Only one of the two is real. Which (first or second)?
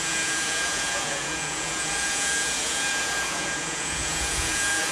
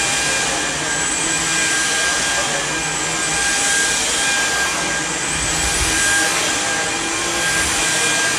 second